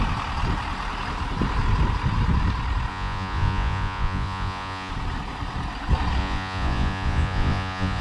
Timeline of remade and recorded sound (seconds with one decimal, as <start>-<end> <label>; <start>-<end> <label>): 0.0-2.9 recorded; 2.9-4.9 remade; 4.9-6.2 recorded; 6.2-8.0 remade